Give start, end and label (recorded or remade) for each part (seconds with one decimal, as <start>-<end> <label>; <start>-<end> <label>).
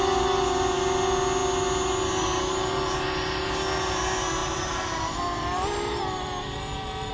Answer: 0.0-4.4 recorded; 4.4-7.1 remade